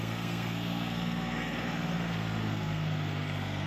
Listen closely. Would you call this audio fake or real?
fake